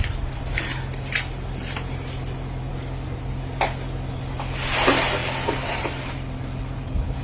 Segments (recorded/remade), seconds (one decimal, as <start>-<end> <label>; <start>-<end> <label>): 0.0-7.2 recorded